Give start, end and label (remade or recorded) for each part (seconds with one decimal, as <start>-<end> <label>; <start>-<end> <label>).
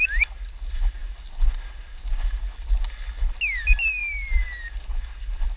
0.0-5.6 recorded